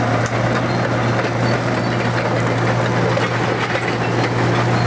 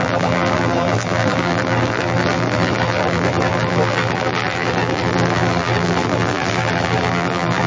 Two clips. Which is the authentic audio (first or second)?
first